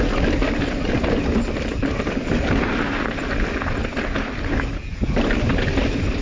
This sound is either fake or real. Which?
real